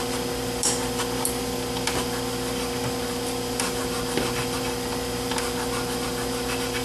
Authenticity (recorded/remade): recorded